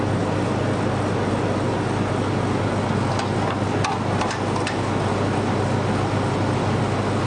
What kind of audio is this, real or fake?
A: real